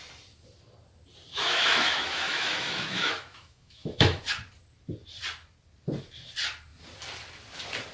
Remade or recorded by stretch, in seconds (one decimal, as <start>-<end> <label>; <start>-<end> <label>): 0.0-1.3 recorded; 1.3-4.2 remade; 4.2-7.9 recorded